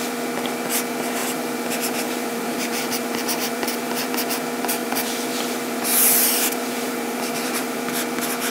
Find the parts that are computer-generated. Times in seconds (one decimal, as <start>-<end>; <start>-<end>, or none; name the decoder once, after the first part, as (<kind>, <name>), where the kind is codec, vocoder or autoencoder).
1.2-4.1 (vocoder, BigVGAN v2); 4.8-7.8